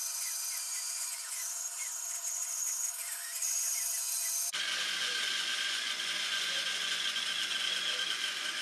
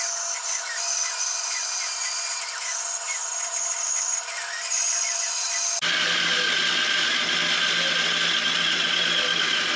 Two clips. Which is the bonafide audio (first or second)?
second